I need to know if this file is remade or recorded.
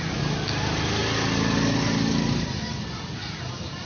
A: recorded